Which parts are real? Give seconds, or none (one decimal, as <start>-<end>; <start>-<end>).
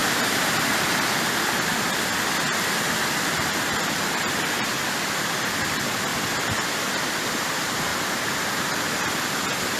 0.7-7.9; 8.5-9.8